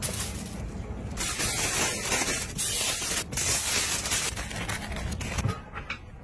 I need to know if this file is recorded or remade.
recorded